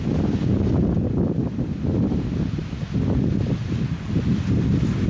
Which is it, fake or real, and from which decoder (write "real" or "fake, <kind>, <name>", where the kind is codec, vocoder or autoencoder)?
real